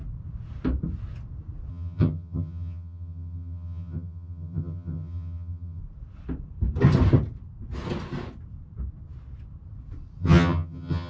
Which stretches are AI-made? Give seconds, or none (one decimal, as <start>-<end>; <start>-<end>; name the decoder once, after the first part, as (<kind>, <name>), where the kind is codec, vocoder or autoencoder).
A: 1.7-5.8 (vocoder, HiFi-GAN); 10.2-11.1